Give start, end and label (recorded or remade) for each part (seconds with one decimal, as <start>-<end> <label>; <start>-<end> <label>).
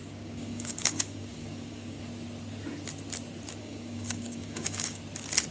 0.0-2.0 remade; 2.0-3.6 recorded; 3.6-5.0 remade; 5.0-5.5 recorded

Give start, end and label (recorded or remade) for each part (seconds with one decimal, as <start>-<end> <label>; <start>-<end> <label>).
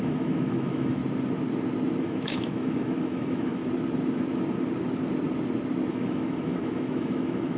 0.0-1.0 remade; 1.0-2.0 recorded; 2.0-3.6 remade; 3.6-5.9 recorded; 5.9-7.6 remade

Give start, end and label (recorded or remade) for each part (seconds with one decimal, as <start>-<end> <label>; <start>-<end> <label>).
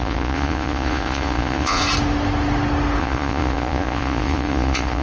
0.0-1.8 remade; 1.8-3.0 recorded; 3.0-5.0 remade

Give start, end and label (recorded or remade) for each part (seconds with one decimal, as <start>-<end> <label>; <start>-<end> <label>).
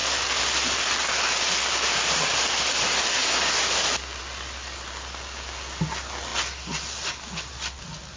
0.0-8.2 recorded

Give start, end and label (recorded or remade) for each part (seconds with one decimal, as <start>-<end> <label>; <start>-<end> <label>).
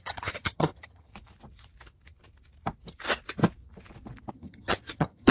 0.0-1.1 remade; 1.1-4.3 recorded; 4.3-5.3 remade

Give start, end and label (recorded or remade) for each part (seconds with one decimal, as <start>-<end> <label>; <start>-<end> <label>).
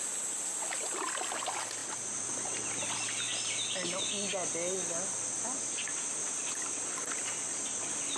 0.0-8.2 recorded